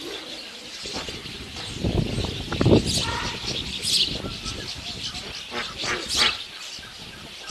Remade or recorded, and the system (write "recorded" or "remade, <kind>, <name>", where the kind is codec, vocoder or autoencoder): recorded